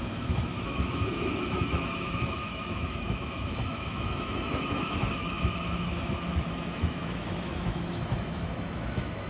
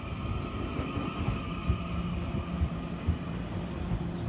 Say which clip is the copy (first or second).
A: first